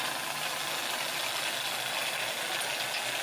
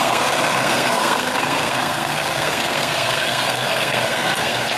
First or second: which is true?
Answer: first